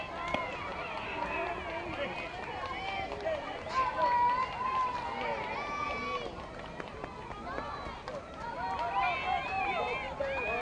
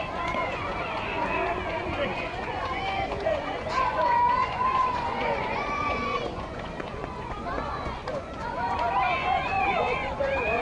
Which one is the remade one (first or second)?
second